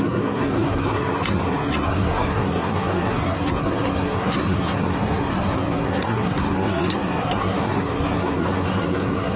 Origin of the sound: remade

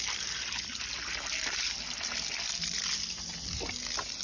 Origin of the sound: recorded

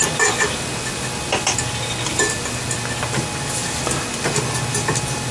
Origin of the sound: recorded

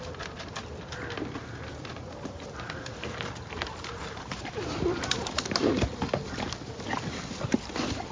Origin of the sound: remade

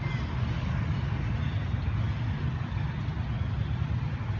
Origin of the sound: recorded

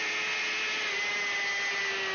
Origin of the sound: recorded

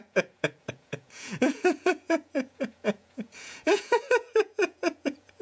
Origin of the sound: remade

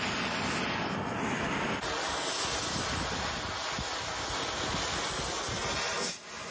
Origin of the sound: recorded